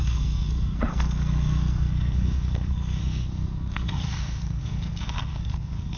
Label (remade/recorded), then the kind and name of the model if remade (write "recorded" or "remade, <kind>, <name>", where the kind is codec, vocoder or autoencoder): remade, codec, SNAC